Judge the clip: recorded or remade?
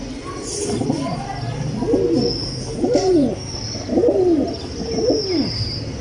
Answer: recorded